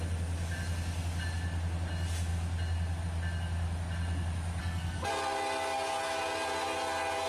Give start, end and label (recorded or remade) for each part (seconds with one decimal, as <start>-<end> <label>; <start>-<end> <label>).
0.0-4.6 recorded; 4.6-5.1 remade; 5.1-7.3 recorded